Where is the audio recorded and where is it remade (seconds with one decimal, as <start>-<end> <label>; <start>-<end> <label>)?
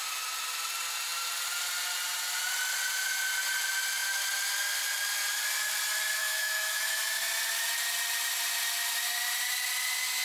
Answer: 0.0-6.2 recorded; 6.2-7.0 remade; 7.0-10.2 recorded